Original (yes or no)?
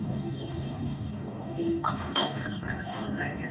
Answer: no